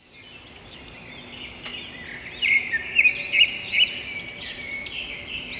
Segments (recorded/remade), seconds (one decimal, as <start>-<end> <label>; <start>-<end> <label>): 0.0-5.6 recorded